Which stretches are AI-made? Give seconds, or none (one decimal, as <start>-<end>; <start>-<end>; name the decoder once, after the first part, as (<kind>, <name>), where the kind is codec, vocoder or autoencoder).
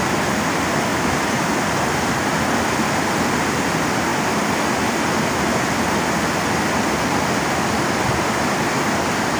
0.9-1.5 (vocoder, BigVGAN v2)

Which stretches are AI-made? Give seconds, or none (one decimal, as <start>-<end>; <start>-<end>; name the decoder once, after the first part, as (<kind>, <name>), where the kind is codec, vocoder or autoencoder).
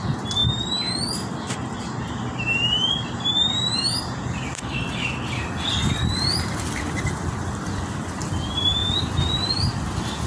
0.4-2.9 (vocoder, BigVGAN v2); 8.8-9.5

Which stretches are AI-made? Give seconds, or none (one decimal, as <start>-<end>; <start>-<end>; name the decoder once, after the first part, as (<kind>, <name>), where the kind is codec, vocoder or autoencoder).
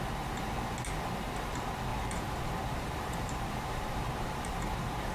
1.9-5.1 (vocoder, BigVGAN v2)